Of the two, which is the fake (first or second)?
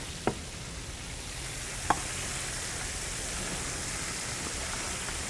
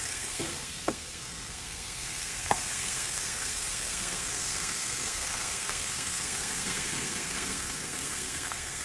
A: second